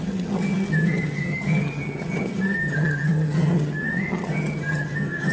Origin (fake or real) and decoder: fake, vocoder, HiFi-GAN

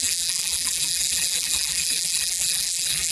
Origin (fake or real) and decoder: fake, vocoder, BigVGAN v2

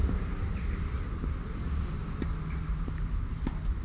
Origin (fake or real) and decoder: real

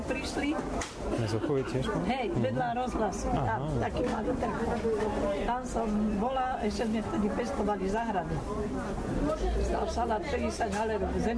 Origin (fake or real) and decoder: real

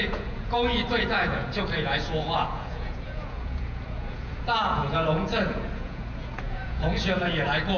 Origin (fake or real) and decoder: fake, vocoder, Vocos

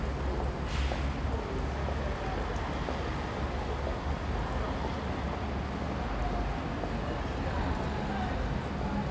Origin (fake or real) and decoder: real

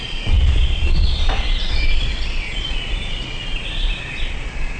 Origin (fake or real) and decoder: fake, vocoder, Vocos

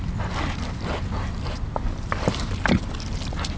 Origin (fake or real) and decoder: real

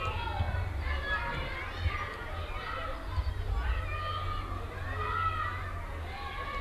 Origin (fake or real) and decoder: real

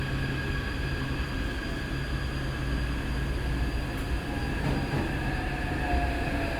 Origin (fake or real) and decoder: real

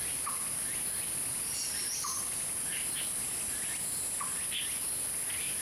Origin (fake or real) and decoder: real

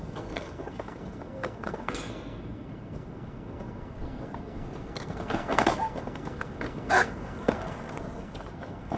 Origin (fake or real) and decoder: fake, codec, SNAC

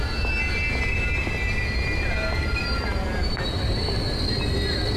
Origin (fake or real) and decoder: real